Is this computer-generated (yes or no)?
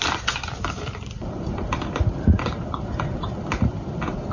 yes